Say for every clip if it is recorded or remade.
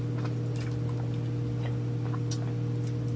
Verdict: recorded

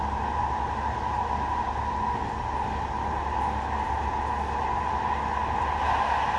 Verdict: recorded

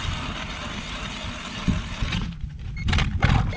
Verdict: recorded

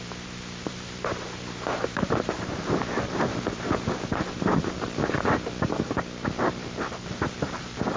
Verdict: remade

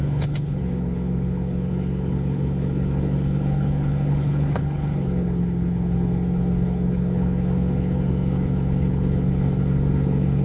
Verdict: remade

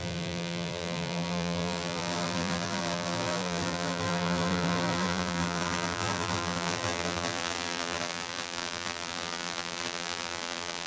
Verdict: remade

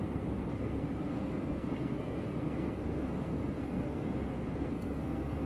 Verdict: remade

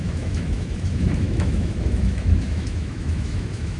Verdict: remade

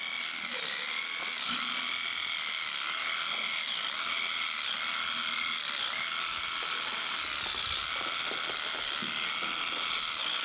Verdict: recorded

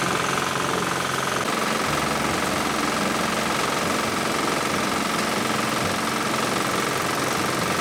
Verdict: recorded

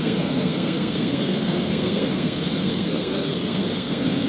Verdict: remade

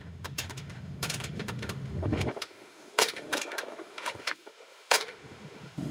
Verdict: remade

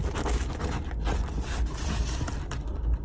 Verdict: recorded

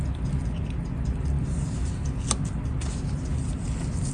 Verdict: recorded